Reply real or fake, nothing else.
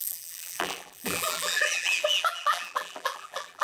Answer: fake